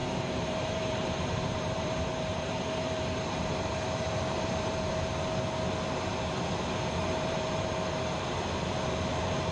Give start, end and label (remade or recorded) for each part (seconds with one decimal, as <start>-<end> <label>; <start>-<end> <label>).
0.0-5.1 remade; 5.1-7.0 recorded; 7.0-7.7 remade; 7.7-9.5 recorded